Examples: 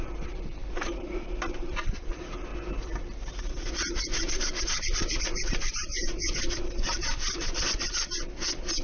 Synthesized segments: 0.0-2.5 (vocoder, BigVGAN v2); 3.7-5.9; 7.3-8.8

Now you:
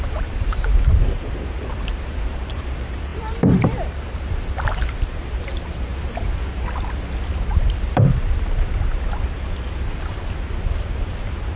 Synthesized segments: 0.0-5.9 (vocoder, BigVGAN v2); 7.4-8.9

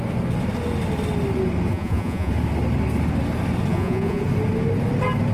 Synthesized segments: 1.7-2.3 (vocoder, Vocos); 3.7-4.2

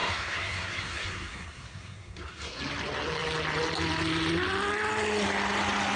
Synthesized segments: 0.0-2.6 (codec, SNAC)

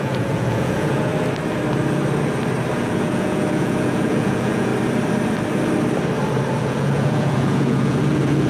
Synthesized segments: 0.0-1.1 (vocoder, Vocos); 2.8-4.7; 6.6-8.5

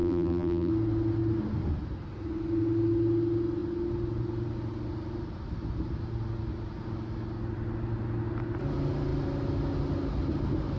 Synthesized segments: 0.0-0.7 (vocoder, BigVGAN v2)

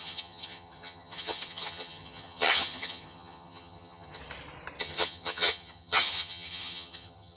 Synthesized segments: 0.0-4.2 (vocoder, HiFi-GAN); 4.8-7.4

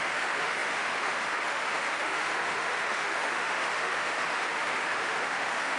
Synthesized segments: 0.0-5.8 (autoencoder, DAC-VAE)